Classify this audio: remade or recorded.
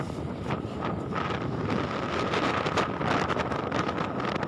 recorded